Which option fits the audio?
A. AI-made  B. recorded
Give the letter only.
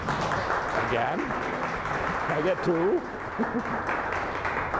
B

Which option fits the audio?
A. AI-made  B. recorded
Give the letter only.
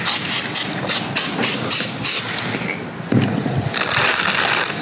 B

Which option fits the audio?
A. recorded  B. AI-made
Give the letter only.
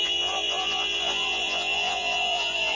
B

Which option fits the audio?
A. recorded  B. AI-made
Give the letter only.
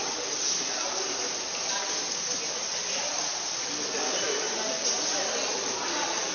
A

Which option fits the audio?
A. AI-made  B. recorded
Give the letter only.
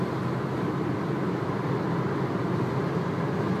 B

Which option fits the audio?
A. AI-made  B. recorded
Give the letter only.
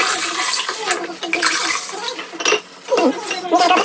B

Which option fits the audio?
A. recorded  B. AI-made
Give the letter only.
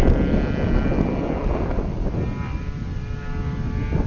A